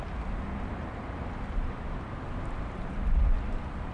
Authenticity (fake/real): real